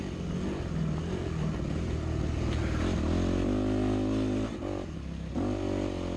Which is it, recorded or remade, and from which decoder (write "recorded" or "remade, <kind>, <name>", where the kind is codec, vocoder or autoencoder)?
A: recorded